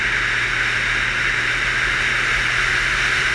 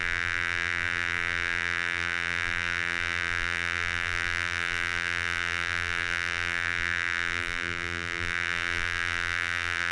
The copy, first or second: second